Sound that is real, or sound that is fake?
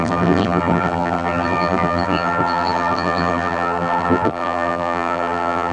fake